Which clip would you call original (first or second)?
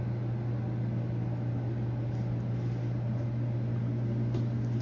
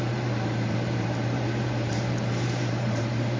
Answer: first